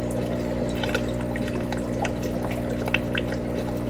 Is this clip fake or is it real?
real